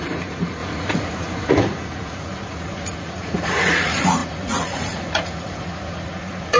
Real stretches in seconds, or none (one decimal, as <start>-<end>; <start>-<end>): none